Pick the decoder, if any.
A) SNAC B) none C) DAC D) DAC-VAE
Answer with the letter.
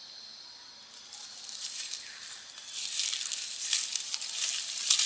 B